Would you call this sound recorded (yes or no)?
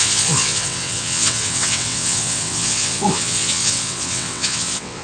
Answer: no